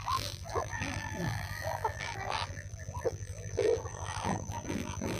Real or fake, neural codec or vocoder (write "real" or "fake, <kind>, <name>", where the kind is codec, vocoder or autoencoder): fake, vocoder, BigVGAN v2